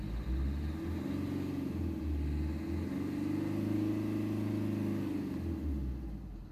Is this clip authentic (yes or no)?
yes